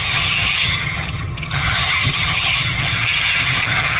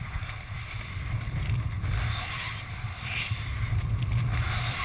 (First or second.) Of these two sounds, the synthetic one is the first